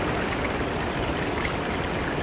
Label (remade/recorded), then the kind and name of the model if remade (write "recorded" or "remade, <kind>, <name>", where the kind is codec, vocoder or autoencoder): remade, vocoder, BigVGAN v2